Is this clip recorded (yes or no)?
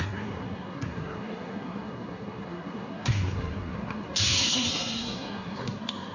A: no